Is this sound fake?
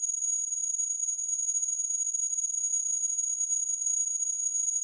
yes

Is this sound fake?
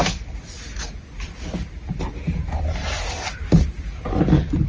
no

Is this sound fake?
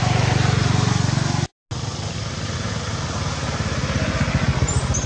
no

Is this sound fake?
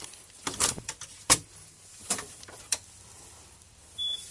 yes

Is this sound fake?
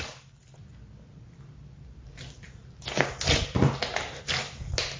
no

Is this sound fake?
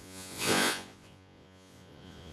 yes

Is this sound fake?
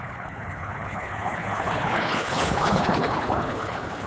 yes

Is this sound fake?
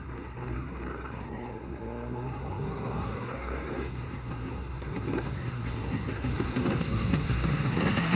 yes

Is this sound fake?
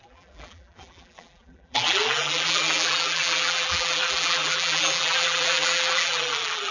yes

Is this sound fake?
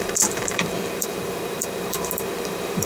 yes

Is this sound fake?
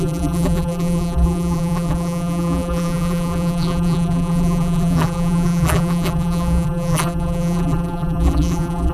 yes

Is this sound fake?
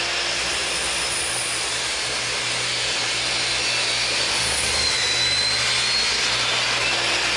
no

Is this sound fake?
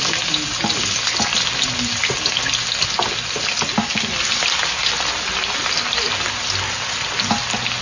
no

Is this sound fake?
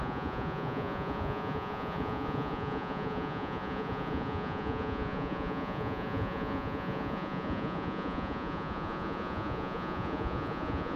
yes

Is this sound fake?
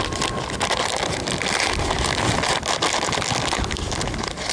no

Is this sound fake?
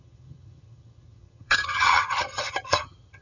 yes